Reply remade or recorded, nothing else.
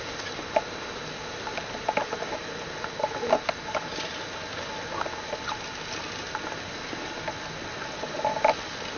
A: recorded